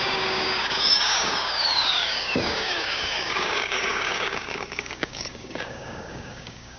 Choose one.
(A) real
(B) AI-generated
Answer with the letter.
B